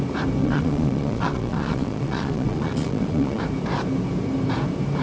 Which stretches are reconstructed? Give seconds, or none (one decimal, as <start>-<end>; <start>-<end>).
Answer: 0.4-3.4